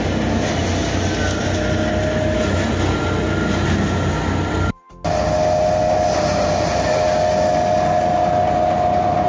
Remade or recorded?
recorded